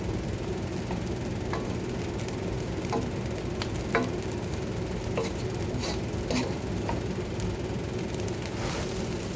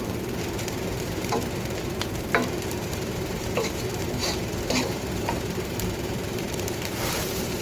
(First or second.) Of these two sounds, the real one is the first